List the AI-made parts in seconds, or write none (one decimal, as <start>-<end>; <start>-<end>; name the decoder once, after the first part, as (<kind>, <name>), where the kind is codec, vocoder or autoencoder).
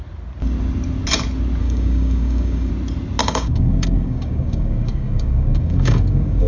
1.6-2.7 (codec, DAC); 3.2-6.5